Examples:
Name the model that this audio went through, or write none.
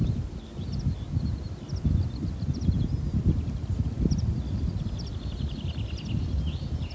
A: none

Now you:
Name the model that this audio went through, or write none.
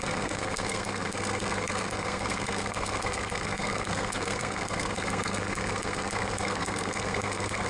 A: codec, SNAC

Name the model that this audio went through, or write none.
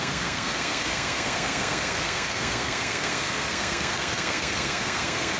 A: codec, SNAC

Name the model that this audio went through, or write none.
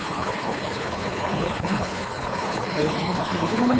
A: codec, HILCodec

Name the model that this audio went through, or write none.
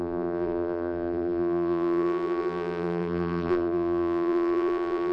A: vocoder, BigVGAN v2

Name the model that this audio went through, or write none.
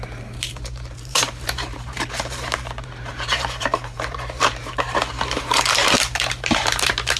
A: vocoder, BigVGAN v2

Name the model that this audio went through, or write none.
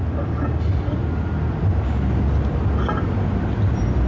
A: none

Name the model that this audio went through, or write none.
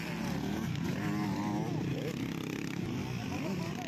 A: none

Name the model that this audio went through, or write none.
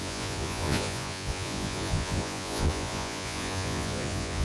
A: vocoder, Vocos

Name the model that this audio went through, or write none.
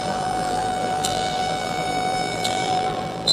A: vocoder, BigVGAN v2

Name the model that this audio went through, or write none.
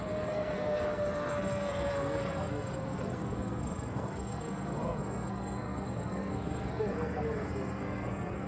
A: codec, SNAC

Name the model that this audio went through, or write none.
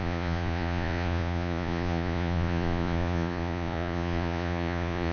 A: vocoder, Vocos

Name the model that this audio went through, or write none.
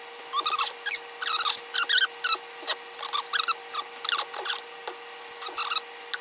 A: none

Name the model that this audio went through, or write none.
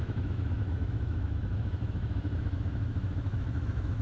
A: autoencoder, DAC-VAE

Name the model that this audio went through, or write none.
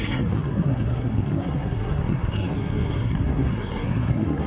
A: codec, SNAC